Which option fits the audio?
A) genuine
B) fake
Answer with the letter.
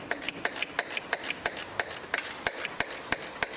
A